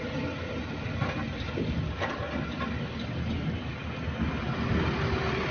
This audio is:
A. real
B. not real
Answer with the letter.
A